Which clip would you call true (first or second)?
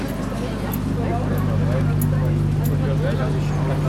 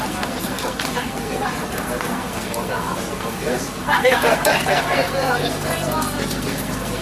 first